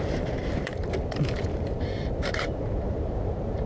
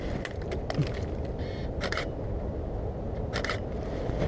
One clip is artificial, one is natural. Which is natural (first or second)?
second